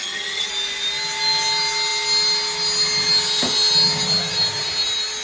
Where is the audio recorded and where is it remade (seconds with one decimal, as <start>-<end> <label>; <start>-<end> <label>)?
0.0-0.5 remade; 0.5-5.2 recorded